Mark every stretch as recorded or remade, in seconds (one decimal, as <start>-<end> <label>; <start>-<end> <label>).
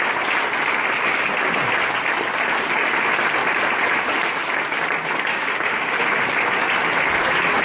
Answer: 0.0-5.3 recorded; 5.3-6.1 remade; 6.1-7.6 recorded